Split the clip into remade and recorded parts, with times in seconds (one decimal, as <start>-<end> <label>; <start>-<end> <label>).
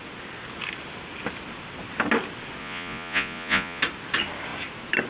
0.0-2.6 recorded; 2.6-3.8 remade; 3.8-5.1 recorded